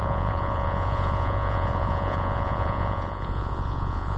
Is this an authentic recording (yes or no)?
no